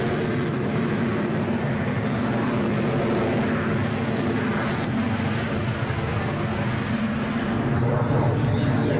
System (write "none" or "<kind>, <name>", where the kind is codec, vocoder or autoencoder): none